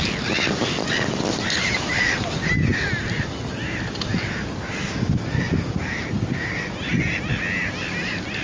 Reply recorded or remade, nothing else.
recorded